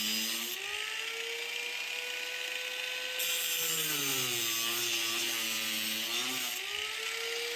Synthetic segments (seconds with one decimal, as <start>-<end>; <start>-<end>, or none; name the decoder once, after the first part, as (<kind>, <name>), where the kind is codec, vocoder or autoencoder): none